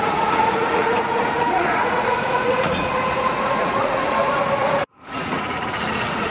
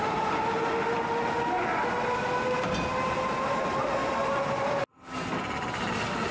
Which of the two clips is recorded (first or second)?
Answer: second